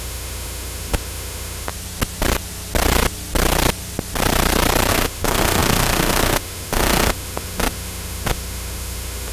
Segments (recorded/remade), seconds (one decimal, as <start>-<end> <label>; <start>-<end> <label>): 0.0-1.7 remade; 1.7-4.9 recorded; 4.9-9.3 remade